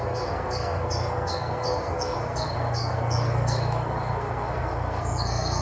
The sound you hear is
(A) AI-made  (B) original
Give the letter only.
A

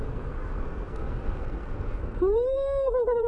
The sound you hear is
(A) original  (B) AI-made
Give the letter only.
B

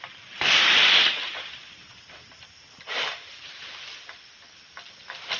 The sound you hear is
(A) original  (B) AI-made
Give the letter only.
A